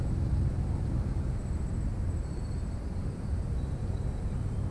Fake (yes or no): yes